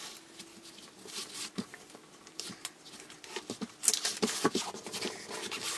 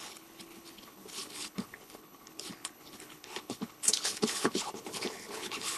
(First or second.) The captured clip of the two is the first